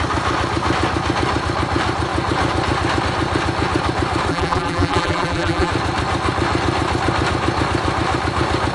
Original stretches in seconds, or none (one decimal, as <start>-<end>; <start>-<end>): 0.0-4.3; 5.7-8.7